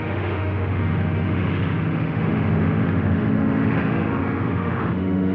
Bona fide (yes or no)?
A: no